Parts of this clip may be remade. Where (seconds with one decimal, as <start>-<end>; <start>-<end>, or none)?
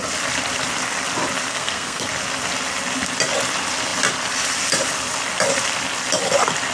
1.5-2.0